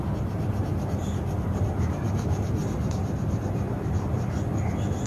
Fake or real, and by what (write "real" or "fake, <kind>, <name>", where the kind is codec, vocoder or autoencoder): real